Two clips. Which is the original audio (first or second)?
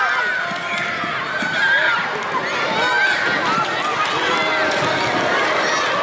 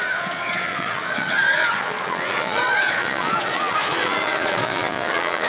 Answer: first